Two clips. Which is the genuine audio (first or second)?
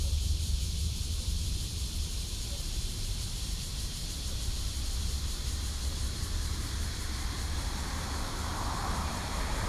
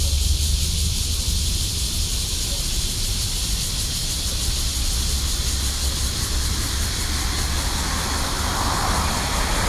second